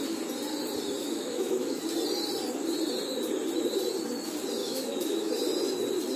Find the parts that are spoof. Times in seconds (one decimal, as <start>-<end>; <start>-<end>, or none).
1.0-1.8; 4.6-5.3